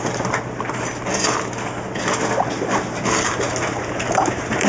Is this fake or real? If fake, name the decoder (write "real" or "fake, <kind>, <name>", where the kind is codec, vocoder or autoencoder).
real